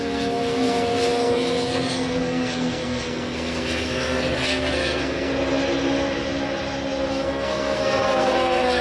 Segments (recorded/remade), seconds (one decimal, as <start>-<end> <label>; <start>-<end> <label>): 0.0-5.3 remade; 5.3-7.1 recorded; 7.1-8.8 remade